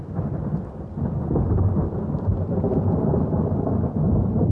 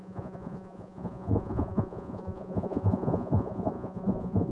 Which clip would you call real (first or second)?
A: first